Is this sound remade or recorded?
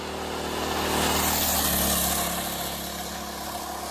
recorded